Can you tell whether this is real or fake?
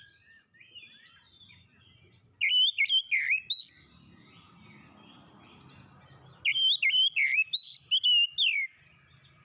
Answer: real